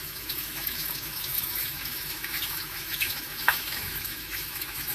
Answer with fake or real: fake